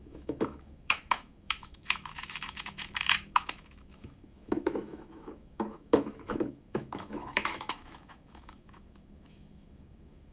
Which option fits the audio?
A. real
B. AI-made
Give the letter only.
B